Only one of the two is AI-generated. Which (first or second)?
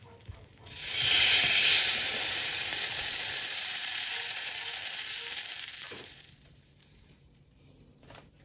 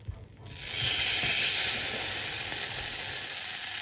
first